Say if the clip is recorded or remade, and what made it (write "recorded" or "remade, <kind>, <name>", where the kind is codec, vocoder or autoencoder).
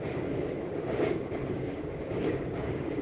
remade, codec, DAC